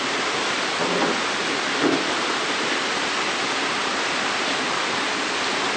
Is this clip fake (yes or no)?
no